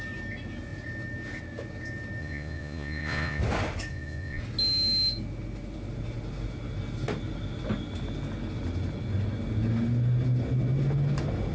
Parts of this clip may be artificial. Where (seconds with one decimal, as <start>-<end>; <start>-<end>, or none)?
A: 2.2-3.4; 3.9-4.4